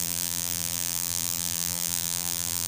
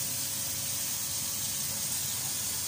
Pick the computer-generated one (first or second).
first